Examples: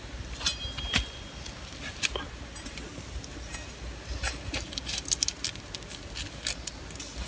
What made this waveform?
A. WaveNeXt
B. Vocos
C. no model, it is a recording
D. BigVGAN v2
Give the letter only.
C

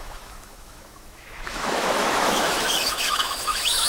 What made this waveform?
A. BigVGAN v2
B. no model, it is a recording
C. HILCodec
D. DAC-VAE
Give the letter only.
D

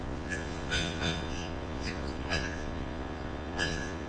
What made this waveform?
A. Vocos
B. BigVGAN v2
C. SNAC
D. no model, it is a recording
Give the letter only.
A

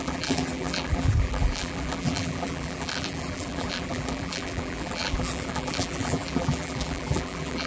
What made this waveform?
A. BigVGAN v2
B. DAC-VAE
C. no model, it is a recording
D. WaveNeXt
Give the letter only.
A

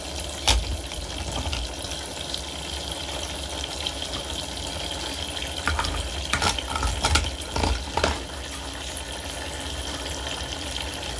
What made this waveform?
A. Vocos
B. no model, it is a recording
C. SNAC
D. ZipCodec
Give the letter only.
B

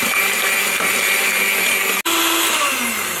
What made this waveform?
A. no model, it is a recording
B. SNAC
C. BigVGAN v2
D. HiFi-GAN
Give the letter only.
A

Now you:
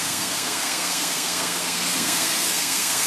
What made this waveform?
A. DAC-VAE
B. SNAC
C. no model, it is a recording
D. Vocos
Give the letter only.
B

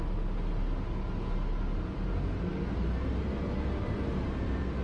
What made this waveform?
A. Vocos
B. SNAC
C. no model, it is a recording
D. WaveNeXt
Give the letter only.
C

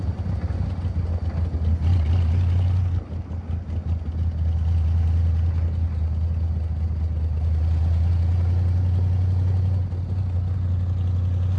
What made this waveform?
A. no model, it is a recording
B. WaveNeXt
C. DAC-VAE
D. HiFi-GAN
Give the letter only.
A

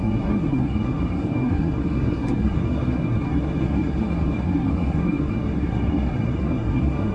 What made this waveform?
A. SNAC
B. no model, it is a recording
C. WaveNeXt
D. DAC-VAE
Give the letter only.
A